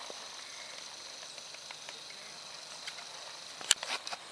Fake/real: real